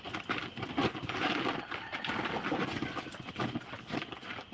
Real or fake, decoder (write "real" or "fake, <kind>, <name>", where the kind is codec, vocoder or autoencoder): real